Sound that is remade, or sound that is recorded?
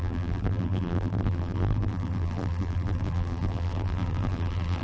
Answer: remade